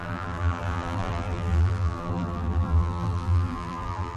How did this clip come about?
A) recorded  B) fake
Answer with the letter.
B